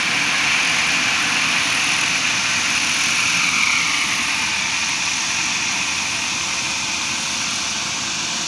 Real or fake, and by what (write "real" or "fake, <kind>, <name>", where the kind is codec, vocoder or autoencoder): real